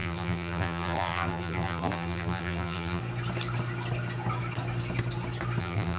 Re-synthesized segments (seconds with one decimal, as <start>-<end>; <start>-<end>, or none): 0.0-3.0; 5.6-6.0